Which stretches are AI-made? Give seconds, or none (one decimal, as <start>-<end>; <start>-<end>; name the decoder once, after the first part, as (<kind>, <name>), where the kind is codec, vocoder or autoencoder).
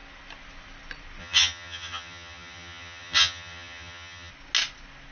1.2-4.3 (vocoder, HiFi-GAN)